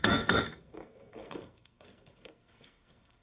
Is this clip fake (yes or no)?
yes